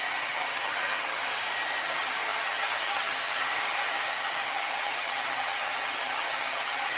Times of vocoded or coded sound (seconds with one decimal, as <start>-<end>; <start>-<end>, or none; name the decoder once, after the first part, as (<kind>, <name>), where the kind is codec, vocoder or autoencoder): 0.0-1.2 (vocoder, HiFi-GAN); 1.8-7.0